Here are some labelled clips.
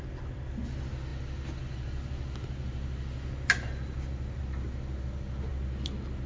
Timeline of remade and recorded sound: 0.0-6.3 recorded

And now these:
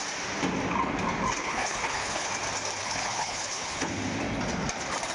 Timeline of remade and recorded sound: 0.0-1.4 recorded; 1.4-2.3 remade; 2.3-2.8 recorded; 2.8-3.9 remade; 3.9-5.1 recorded